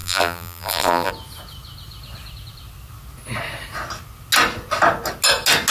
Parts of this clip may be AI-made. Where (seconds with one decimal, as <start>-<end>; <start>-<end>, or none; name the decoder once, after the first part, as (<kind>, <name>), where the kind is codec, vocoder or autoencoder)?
0.0-1.1 (vocoder, BigVGAN v2)